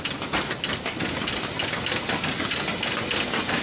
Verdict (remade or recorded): recorded